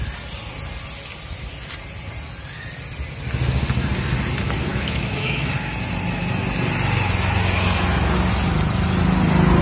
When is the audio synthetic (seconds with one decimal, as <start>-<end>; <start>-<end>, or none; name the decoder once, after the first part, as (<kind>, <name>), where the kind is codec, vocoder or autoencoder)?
4.7-5.5 (autoencoder, DAC-VAE)